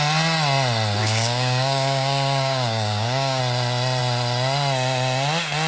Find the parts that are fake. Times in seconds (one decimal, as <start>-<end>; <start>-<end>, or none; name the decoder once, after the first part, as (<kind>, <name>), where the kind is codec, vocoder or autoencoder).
1.0-3.4 (codec, DAC)